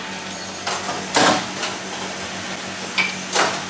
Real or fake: real